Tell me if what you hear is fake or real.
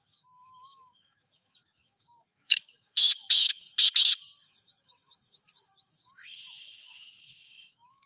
fake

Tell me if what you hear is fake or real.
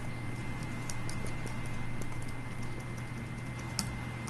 real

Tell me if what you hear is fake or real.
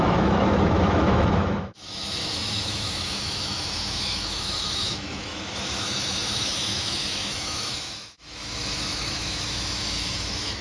fake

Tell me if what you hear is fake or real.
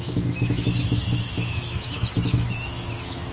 fake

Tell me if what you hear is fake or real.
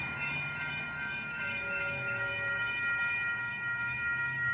fake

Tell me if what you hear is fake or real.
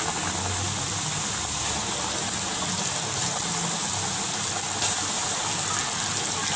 real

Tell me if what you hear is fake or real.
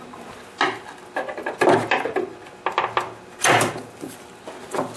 real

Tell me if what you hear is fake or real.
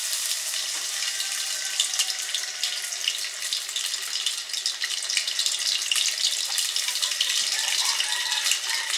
real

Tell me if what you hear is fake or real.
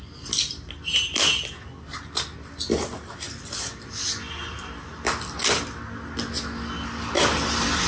real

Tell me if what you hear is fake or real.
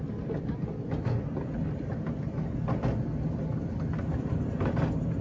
real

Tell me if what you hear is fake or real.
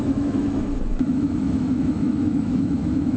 fake